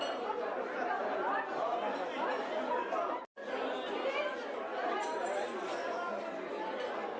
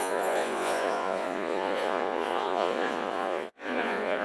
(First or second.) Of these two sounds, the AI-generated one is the second